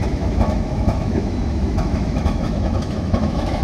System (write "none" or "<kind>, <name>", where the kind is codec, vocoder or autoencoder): autoencoder, DAC-VAE